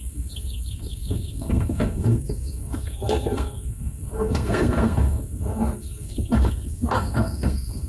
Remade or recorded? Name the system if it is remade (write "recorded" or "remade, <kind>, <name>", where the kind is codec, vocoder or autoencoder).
remade, codec, SNAC